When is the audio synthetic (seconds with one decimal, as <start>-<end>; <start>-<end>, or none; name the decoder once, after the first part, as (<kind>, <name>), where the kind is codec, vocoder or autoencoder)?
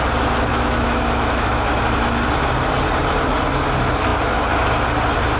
0.5-1.8 (autoencoder, DAC-VAE)